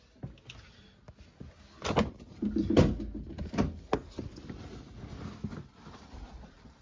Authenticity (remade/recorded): recorded